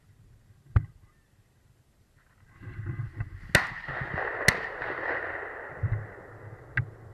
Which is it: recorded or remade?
recorded